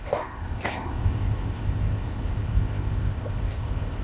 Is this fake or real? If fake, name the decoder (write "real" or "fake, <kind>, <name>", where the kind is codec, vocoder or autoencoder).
fake, codec, ZipCodec